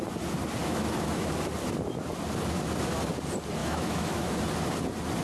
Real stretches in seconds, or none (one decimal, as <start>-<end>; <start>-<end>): 0.0-0.6; 1.3-3.6; 4.4-5.2